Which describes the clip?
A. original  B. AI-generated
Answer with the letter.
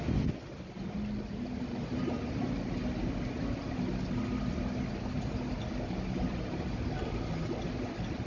A